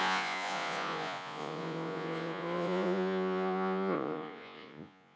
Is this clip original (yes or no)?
no